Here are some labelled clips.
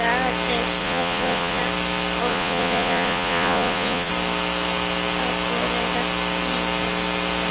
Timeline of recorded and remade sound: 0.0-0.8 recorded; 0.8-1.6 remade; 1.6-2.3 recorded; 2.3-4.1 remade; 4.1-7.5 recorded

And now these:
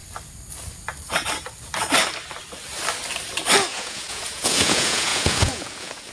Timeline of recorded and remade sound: 0.0-3.7 recorded; 3.7-6.1 remade